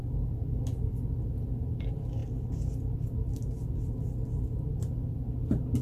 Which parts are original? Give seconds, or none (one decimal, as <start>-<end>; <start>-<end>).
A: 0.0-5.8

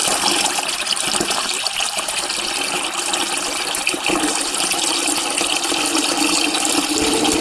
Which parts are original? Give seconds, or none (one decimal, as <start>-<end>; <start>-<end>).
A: 0.0-7.4

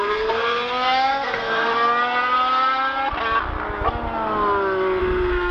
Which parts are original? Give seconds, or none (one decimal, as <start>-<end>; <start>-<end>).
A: 1.7-5.0